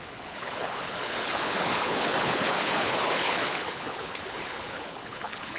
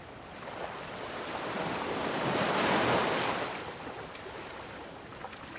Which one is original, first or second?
second